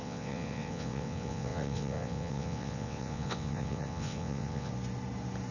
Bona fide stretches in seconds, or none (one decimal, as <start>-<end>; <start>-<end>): 4.7-5.5